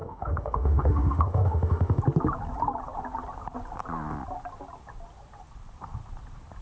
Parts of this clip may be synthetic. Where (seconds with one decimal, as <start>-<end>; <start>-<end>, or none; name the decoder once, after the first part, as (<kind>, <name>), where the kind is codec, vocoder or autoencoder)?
0.0-2.0 (autoencoder, DAC-VAE)